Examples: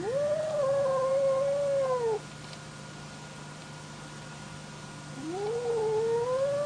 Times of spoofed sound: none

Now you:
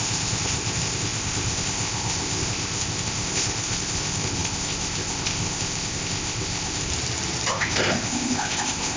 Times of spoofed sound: 0.0-6.9 (codec, ZipCodec); 7.5-9.0